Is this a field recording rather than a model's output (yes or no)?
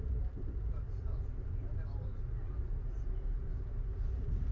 yes